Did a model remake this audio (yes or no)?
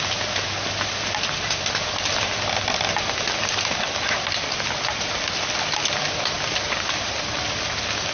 no